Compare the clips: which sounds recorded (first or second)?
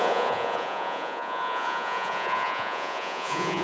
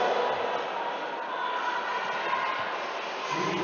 second